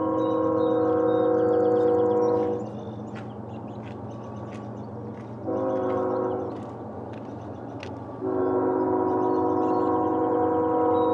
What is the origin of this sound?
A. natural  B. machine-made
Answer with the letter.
A